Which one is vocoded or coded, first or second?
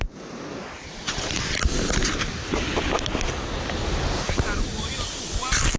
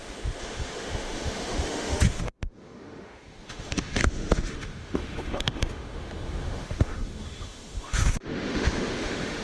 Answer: second